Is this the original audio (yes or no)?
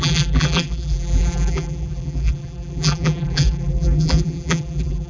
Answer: no